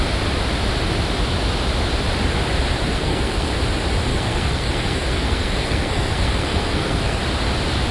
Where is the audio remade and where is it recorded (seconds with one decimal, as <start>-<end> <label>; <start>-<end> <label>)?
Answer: 0.0-2.9 recorded; 2.9-3.5 remade; 3.5-4.1 recorded; 4.1-7.2 remade; 7.2-7.9 recorded